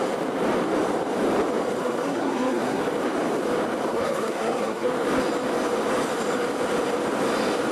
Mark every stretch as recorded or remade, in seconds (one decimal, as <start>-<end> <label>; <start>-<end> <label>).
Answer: 0.0-1.8 recorded; 1.8-2.8 remade; 2.8-3.9 recorded; 3.9-4.9 remade; 4.9-7.7 recorded